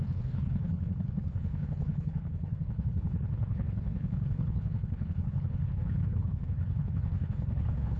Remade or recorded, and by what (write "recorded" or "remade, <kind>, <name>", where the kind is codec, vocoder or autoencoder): remade, codec, HILCodec